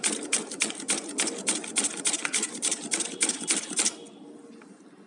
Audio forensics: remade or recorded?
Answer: recorded